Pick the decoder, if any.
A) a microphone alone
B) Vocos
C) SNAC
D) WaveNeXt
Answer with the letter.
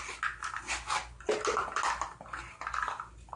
A